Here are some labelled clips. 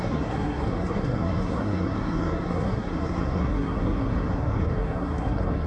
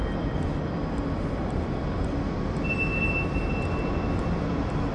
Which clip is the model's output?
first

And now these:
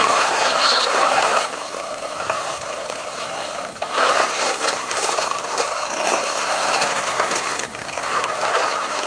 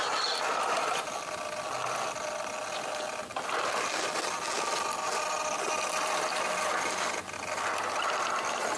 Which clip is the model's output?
first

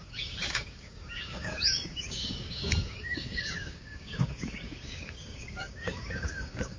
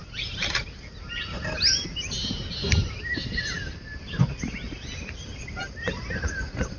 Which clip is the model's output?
first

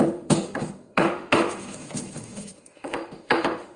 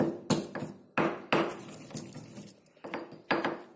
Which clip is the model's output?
first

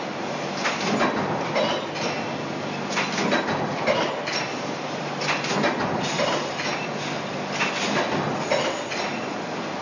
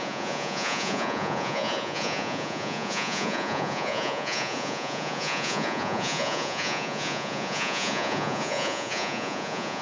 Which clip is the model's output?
second